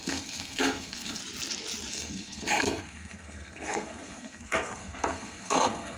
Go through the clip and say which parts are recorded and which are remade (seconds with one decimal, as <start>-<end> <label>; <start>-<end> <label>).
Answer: 0.0-1.2 remade; 1.2-1.9 recorded; 1.9-6.0 remade